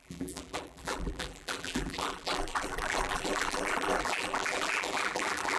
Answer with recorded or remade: remade